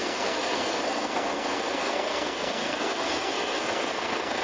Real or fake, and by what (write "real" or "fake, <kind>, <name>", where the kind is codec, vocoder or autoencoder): fake, codec, SNAC